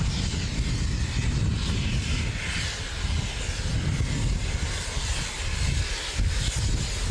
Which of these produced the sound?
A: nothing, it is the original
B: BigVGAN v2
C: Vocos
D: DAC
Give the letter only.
A